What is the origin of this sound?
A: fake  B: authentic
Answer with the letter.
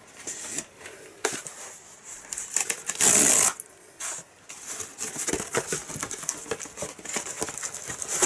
B